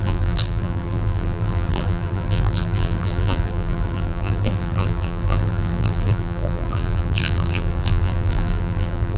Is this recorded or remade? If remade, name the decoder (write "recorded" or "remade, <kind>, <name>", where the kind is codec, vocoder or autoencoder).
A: remade, vocoder, BigVGAN v2